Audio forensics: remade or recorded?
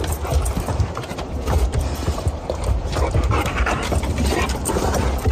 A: remade